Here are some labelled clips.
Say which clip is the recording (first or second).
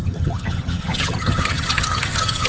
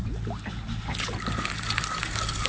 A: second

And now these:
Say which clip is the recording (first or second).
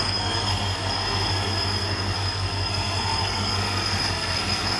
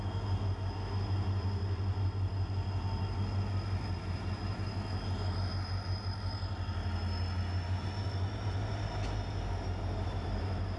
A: second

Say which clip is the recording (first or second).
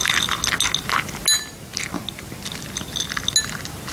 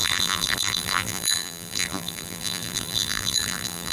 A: first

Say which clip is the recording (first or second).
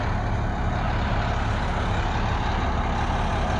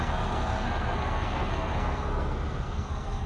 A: first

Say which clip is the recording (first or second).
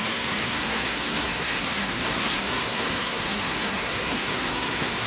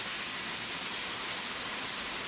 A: second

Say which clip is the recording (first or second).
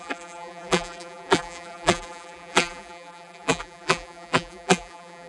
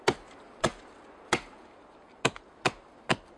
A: second